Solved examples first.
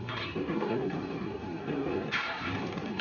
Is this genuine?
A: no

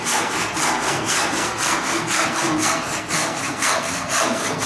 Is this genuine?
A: no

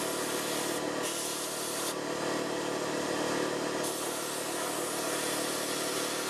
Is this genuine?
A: yes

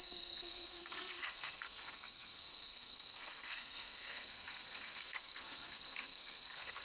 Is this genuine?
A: no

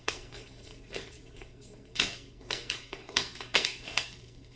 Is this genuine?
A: no